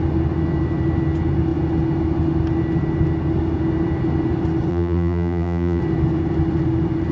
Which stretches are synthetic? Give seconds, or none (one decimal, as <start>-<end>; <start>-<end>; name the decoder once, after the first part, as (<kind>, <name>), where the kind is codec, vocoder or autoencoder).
4.7-5.8 (vocoder, BigVGAN v2)